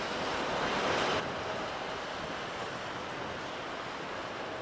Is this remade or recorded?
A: recorded